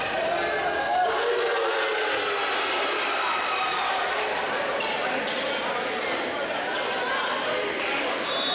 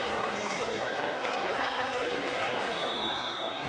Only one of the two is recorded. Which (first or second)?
first